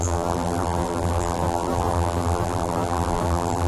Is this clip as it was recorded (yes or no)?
no